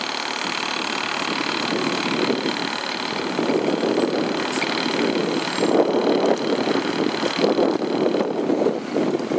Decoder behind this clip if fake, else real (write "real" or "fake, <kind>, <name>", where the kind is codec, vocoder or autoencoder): real